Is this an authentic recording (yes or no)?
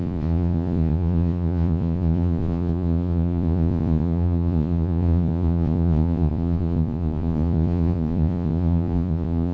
no